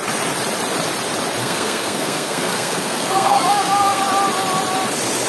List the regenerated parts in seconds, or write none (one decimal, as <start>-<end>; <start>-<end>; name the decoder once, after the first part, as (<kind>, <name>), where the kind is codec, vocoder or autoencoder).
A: 1.4-4.0 (codec, SNAC)